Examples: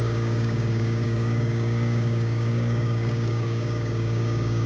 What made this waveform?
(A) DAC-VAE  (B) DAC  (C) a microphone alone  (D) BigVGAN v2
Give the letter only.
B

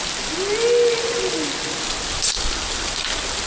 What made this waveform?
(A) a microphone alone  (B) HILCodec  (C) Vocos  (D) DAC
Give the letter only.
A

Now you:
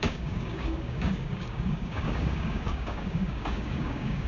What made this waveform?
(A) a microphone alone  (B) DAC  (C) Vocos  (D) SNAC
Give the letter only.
B